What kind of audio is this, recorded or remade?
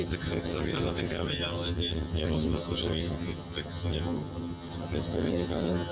remade